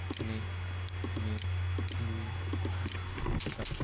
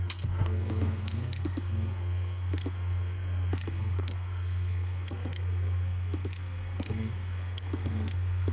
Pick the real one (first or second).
first